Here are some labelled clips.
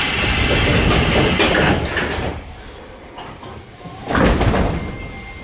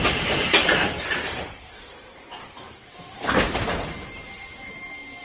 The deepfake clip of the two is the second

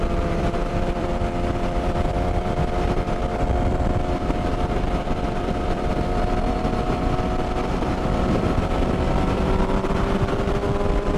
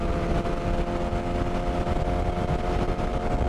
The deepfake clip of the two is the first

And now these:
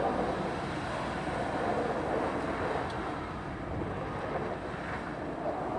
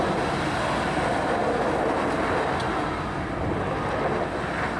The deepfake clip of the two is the first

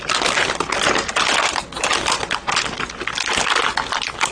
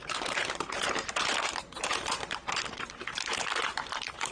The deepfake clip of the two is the second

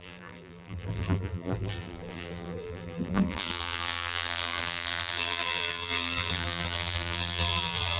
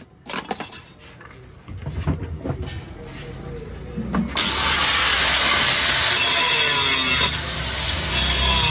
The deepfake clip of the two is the first